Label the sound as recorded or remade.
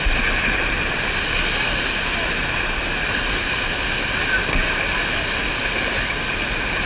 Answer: recorded